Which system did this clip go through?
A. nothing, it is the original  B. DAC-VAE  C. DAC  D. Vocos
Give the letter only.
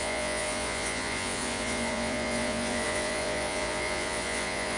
D